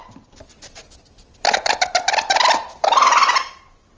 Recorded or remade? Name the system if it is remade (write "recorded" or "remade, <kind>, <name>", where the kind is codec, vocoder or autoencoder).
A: recorded